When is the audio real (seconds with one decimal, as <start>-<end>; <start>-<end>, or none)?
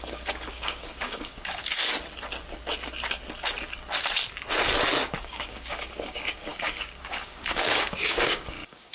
1.6-5.2